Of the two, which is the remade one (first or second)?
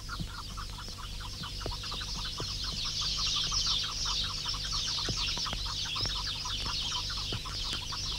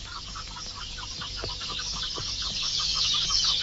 second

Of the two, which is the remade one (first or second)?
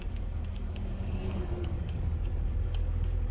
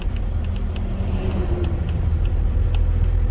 first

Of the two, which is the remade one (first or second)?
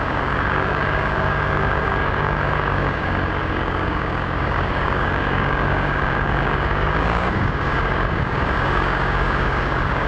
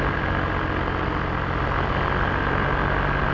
first